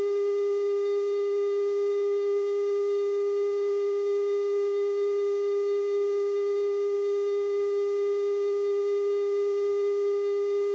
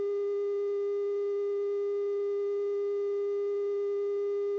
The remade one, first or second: first